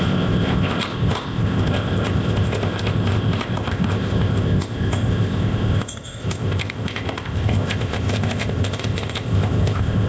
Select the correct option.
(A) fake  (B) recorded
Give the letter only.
A